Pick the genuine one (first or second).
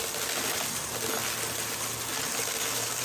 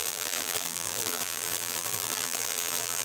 first